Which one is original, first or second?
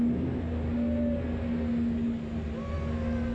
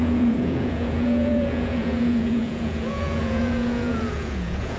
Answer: first